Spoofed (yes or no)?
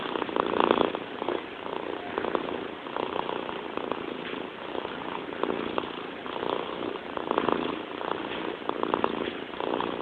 no